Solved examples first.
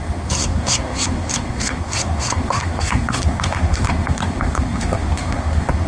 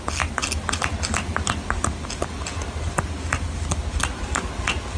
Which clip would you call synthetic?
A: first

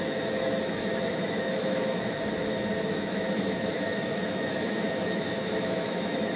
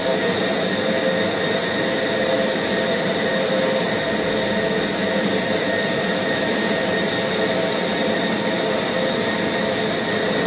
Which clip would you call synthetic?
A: first